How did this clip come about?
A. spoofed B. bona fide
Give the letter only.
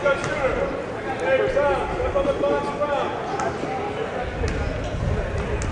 B